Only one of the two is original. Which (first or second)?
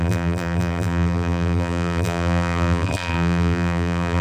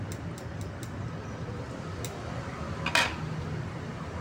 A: second